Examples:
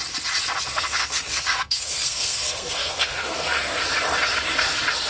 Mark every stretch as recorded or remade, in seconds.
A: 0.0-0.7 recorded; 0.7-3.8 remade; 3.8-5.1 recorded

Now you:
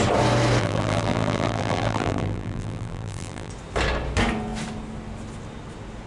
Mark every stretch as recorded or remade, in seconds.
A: 0.0-0.6 recorded; 0.6-3.5 remade; 3.5-6.1 recorded

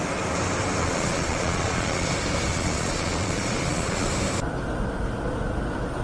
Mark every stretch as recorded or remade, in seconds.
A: 0.0-0.8 recorded; 0.8-2.1 remade; 2.1-2.5 recorded; 2.5-4.1 remade; 4.1-6.0 recorded

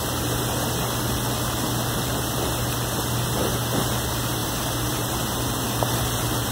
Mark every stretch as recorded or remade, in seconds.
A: 0.0-4.4 recorded; 4.4-5.4 remade; 5.4-6.5 recorded

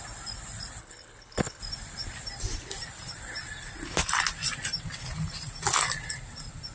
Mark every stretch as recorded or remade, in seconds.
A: 0.0-0.8 recorded; 0.8-1.6 remade; 1.6-6.7 recorded

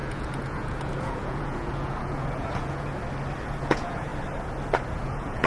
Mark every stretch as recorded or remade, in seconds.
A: 0.0-2.9 remade; 2.9-3.6 recorded; 3.6-4.1 remade; 4.1-4.9 recorded; 4.9-5.5 remade